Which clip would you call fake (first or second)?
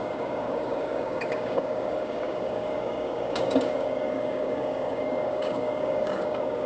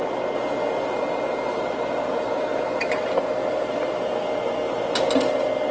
first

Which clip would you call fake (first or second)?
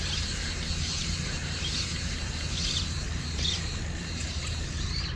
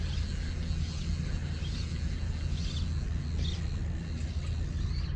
first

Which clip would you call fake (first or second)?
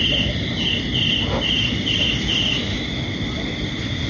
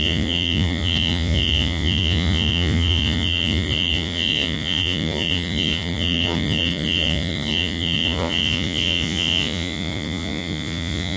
second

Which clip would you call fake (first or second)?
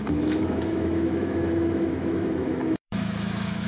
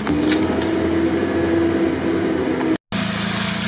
first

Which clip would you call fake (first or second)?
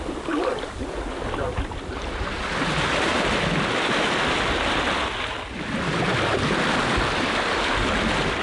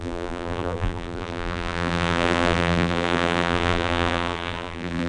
second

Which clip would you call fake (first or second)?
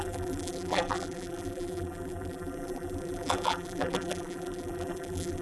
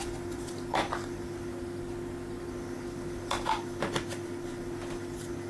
first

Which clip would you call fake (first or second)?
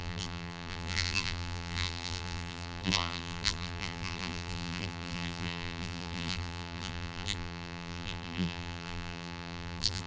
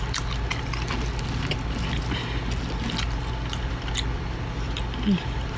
first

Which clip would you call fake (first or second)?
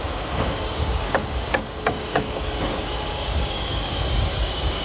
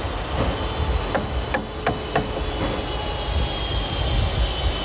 first